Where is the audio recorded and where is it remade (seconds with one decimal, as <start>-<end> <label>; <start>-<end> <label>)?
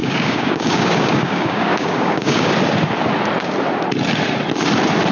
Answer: 0.0-2.5 remade; 2.5-5.1 recorded